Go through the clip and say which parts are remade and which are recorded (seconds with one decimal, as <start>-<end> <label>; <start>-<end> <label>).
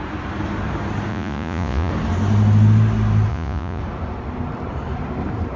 0.0-1.1 recorded; 1.1-1.9 remade; 1.9-3.3 recorded; 3.3-3.8 remade; 3.8-5.6 recorded